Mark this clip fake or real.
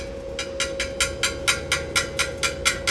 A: real